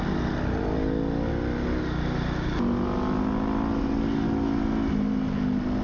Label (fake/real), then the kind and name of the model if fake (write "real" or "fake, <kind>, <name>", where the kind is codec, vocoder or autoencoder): real